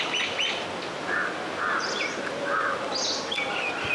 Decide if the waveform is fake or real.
real